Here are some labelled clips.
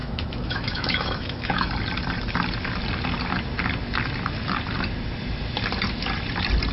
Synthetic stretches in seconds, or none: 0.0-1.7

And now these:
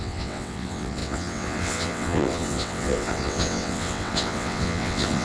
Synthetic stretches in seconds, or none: 0.0-5.2

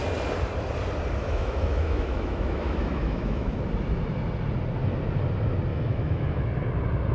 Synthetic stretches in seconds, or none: 1.2-3.6; 5.7-6.4

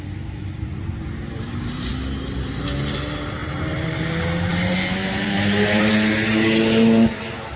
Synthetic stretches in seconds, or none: 0.7-1.9; 3.4-4.1; 4.5-5.9

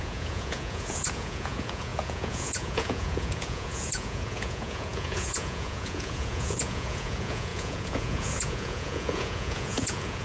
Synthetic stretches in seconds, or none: 0.0-10.2

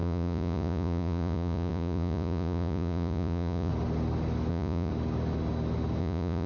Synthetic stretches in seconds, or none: 0.0-3.7; 4.5-4.9; 6.0-6.5

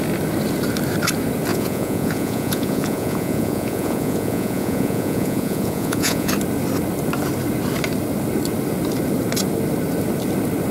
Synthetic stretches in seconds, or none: 1.5-6.3